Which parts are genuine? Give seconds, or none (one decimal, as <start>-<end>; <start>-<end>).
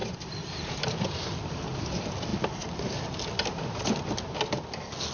0.8-5.1